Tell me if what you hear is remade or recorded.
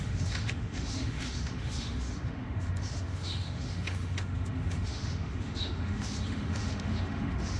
remade